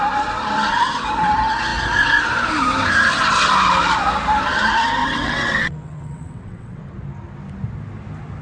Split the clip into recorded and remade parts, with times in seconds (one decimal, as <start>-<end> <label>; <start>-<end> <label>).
0.0-5.0 recorded; 5.0-6.8 remade; 6.8-8.4 recorded